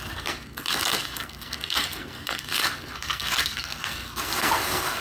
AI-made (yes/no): yes